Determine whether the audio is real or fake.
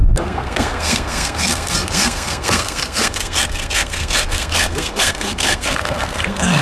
fake